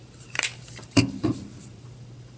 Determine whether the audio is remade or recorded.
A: remade